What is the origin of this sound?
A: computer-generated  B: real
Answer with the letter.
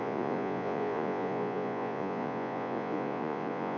A